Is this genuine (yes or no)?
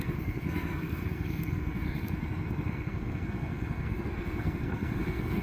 no